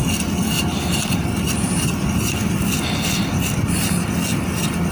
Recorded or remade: recorded